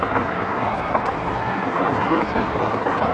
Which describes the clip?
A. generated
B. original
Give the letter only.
A